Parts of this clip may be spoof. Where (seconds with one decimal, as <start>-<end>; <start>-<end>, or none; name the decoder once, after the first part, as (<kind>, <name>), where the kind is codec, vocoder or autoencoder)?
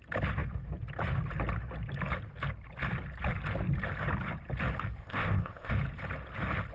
5.0-5.7 (codec, ZipCodec)